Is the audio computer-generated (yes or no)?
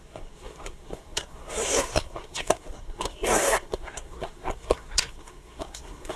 yes